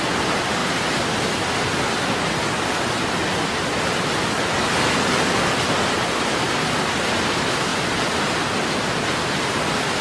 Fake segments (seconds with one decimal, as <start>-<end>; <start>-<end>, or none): none